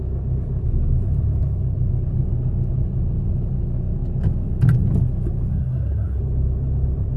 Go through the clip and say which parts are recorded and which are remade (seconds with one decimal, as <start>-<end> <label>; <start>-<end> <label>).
0.0-5.5 recorded; 5.5-6.2 remade; 6.2-7.2 recorded